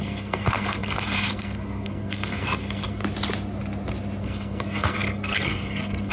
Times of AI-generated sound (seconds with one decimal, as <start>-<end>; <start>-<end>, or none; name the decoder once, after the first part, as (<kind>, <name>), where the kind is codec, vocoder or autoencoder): 0.0-3.0 (codec, SNAC); 4.2-6.1